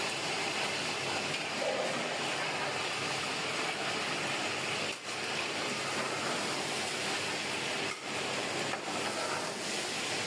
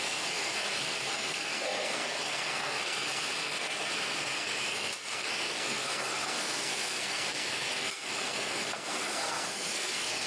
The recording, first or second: first